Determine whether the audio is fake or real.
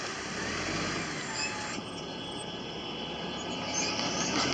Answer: real